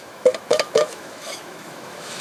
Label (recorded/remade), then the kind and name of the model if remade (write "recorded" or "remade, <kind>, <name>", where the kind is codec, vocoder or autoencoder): remade, autoencoder, DAC-VAE